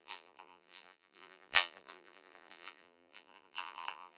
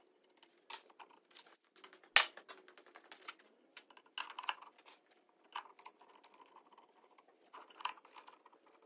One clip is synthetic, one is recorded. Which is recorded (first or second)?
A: second